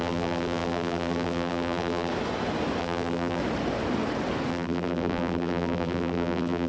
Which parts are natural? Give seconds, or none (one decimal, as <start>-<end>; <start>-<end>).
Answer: 2.1-2.8; 3.4-4.5